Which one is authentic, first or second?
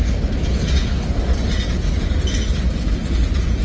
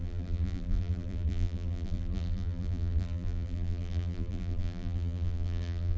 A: first